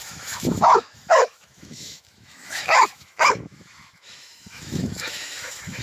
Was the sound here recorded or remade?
remade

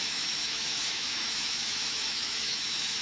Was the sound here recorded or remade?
remade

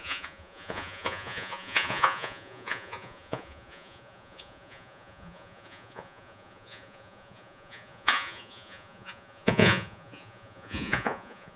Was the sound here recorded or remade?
remade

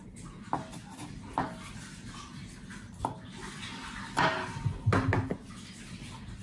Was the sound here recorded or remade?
recorded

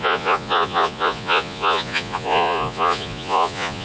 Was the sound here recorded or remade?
remade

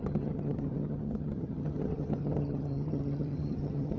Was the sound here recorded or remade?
remade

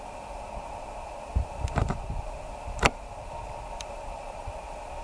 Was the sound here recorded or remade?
remade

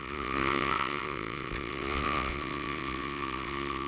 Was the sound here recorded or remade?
remade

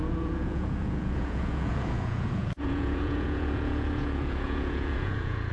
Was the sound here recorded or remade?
remade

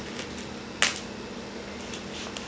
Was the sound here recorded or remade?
recorded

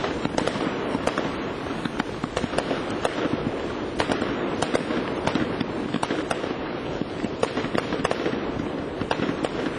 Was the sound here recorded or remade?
recorded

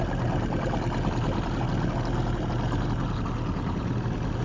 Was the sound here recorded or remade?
recorded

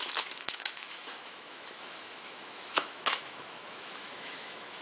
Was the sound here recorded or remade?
remade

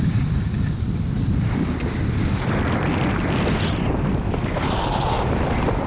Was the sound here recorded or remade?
recorded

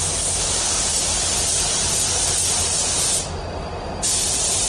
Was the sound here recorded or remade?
recorded